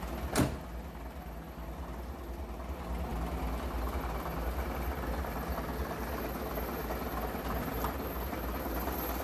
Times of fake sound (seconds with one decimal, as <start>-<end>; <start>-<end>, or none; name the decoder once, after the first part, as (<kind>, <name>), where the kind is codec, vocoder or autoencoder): none